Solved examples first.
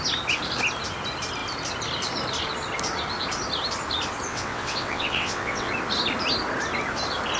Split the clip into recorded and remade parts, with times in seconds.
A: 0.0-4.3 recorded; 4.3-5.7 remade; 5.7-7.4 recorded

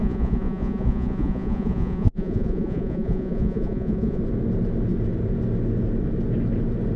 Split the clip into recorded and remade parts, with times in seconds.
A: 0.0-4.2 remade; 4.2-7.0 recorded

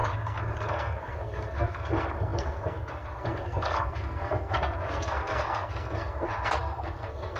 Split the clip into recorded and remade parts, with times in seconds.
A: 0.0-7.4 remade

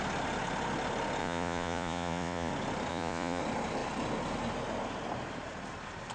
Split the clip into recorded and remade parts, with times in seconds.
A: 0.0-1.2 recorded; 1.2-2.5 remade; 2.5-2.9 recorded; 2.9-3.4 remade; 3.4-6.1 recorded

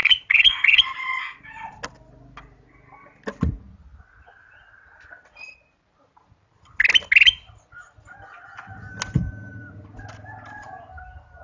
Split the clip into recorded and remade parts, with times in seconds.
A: 0.0-0.8 remade; 0.8-11.4 recorded

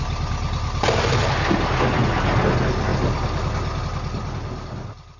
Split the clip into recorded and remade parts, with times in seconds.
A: 0.0-5.2 recorded

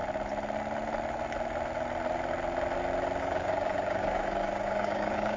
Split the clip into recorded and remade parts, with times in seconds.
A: 0.0-3.2 recorded; 3.2-5.4 remade

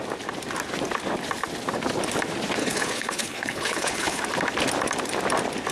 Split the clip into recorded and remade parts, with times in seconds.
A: 0.0-2.6 recorded; 2.6-4.2 remade; 4.2-5.7 recorded